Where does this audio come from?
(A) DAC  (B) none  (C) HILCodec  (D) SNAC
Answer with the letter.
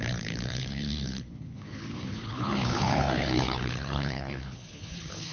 C